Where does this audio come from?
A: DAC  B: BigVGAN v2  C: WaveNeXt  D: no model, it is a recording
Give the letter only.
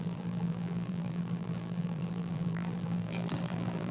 B